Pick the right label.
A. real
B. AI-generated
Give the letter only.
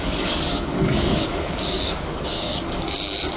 B